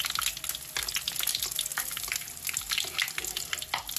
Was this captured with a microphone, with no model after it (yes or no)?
yes